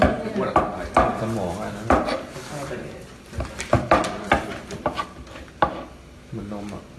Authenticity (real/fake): real